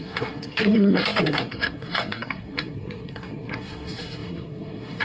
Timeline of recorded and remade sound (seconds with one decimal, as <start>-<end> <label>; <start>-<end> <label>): 0.0-5.0 remade